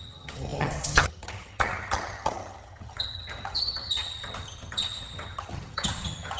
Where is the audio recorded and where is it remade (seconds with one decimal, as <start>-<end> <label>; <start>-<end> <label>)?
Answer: 0.0-6.4 remade